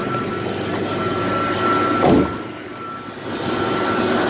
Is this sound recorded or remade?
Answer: recorded